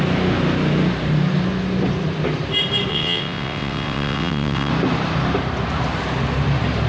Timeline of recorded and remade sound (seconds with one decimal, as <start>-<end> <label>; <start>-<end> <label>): 0.0-2.9 recorded; 2.9-4.7 remade; 4.7-6.9 recorded